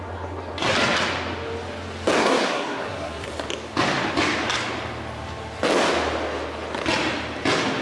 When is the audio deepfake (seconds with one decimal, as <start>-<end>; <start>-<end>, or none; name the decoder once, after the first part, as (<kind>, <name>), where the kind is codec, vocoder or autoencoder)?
2.2-3.3 (codec, SNAC)